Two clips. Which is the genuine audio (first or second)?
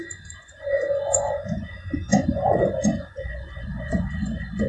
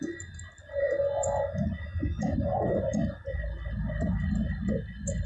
second